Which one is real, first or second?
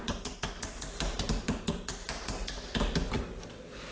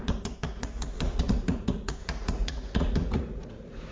first